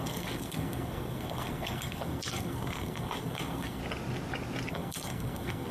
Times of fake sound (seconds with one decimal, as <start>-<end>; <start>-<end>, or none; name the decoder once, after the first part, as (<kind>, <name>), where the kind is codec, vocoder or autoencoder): 0.0-3.8 (codec, SNAC); 4.7-5.7